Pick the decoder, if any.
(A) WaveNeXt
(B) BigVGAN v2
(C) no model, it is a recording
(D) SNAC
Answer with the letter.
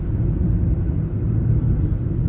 C